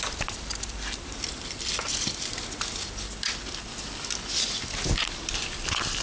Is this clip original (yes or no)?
yes